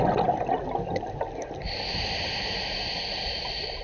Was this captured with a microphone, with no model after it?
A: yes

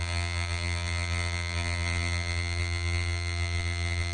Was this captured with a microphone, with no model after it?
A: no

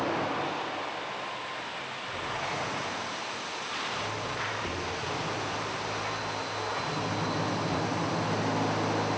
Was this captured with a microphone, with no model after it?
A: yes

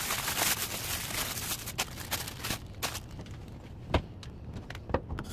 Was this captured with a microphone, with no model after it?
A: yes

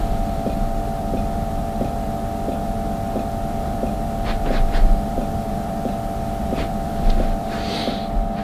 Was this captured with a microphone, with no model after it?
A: no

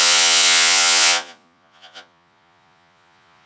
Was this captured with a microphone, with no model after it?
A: no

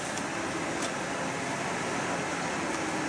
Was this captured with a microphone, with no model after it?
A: yes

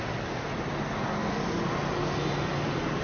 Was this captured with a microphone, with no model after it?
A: yes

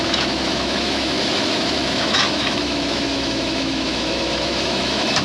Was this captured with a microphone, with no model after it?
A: no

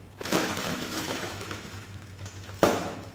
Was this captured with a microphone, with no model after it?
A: no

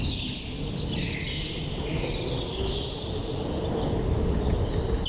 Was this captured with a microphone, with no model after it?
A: yes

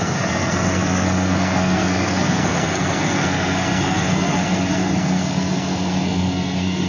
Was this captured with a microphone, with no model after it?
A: no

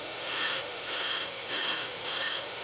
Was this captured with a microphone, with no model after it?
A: no